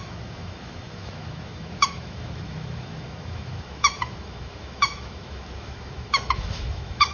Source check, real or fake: fake